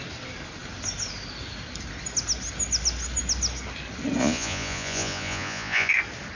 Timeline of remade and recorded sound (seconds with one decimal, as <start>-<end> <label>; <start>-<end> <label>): 0.0-4.2 recorded; 4.2-5.9 remade; 5.9-6.4 recorded

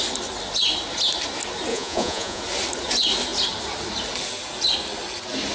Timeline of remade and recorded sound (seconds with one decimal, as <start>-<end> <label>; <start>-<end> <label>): 0.0-1.7 recorded; 1.7-2.4 remade; 2.4-5.5 recorded

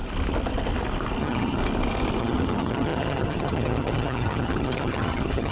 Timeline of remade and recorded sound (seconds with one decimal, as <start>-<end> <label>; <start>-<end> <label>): 0.0-1.2 recorded; 1.2-1.6 remade; 1.6-2.2 recorded; 2.2-5.5 remade

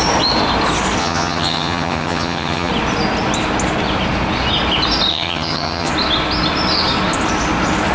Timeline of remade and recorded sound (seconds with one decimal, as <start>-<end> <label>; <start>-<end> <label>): 0.0-1.0 recorded; 1.0-2.7 remade; 2.7-5.1 recorded; 5.1-5.9 remade; 5.9-7.9 recorded

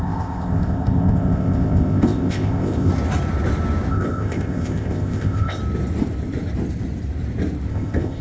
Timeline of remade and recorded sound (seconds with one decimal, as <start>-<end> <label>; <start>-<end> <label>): 0.0-2.9 remade; 2.9-3.9 recorded; 3.9-5.6 remade; 5.6-7.7 recorded; 7.7-8.2 remade